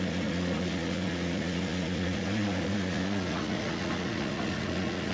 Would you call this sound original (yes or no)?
no